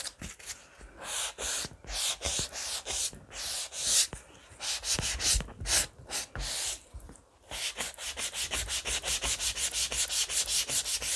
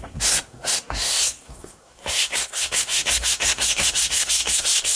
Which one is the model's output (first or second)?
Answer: second